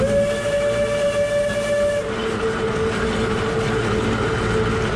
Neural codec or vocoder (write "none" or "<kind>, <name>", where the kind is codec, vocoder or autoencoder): none